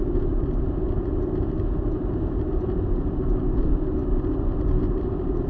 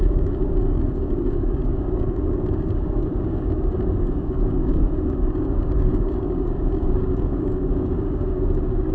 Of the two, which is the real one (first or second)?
first